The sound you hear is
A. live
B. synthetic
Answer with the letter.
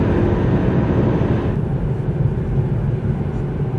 A